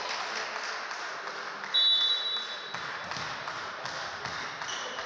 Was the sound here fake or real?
real